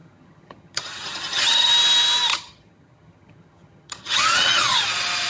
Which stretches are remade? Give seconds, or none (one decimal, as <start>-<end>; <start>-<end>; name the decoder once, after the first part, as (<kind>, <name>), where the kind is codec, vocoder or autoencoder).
0.0-1.7 (vocoder, HiFi-GAN); 2.3-4.8